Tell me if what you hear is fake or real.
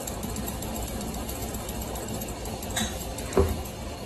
real